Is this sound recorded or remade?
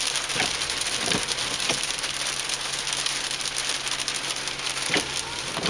recorded